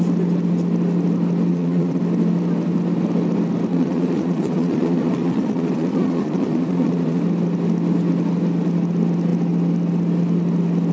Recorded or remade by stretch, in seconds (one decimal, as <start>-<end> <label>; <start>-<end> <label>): 0.0-1.5 recorded; 1.5-2.0 remade; 2.0-3.7 recorded; 3.7-7.2 remade; 7.2-10.9 recorded